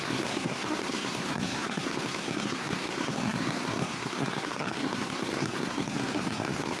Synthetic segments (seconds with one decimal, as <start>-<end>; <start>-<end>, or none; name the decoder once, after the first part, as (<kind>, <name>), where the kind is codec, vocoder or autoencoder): 0.0-6.8 (codec, SNAC)